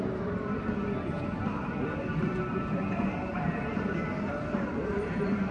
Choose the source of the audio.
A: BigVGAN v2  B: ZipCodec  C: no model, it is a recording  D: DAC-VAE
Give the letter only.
A